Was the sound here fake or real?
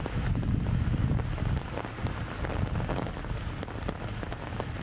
real